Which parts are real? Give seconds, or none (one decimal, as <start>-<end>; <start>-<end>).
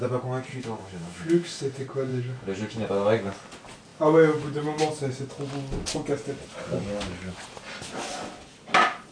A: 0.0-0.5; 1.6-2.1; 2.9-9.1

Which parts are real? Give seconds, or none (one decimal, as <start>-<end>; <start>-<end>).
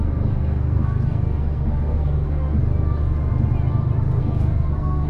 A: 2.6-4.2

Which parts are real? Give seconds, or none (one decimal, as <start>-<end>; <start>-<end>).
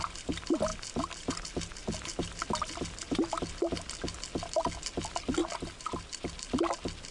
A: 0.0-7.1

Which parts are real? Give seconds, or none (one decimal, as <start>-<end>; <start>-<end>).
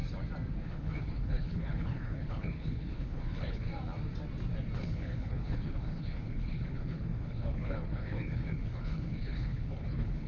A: 0.0-0.6; 3.7-4.8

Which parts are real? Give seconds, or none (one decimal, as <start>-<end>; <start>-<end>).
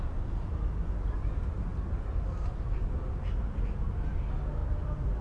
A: 0.0-5.2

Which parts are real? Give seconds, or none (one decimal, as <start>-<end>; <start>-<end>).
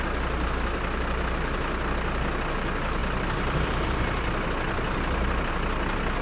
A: 0.0-3.0; 5.5-6.2